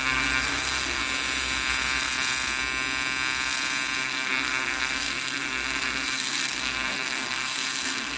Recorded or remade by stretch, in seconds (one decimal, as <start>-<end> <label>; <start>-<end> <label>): 0.0-1.0 remade; 1.0-4.0 recorded; 4.0-8.2 remade